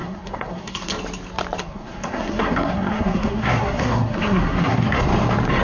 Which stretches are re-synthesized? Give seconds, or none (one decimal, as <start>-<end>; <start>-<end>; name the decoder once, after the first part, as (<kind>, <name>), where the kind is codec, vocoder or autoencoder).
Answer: 0.0-0.9 (codec, SNAC); 1.6-5.0

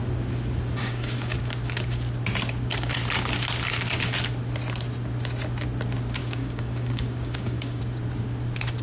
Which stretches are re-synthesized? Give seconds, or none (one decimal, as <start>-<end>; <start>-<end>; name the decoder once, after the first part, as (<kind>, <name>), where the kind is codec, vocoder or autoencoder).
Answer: 0.8-1.4 (codec, DAC); 6.2-7.8

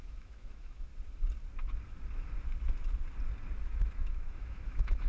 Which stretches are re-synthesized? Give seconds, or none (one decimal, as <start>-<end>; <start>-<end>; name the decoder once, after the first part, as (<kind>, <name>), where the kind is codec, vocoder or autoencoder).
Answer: 0.0-0.9 (autoencoder, DAC-VAE); 3.6-5.1

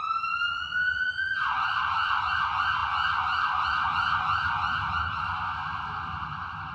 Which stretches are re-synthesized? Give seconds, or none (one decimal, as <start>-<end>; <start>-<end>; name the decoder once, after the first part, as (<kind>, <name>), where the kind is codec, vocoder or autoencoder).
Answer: 0.5-2.2 (vocoder, Vocos)

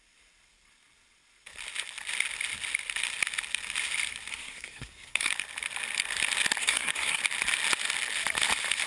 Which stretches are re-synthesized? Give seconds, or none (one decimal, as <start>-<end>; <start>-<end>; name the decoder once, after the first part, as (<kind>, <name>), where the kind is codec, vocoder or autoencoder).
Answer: 4.3-5.3 (codec, SNAC); 6.6-7.2